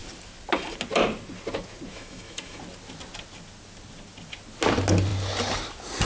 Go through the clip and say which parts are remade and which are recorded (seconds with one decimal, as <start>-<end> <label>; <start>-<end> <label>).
0.0-1.9 recorded; 1.9-2.6 remade; 2.6-6.0 recorded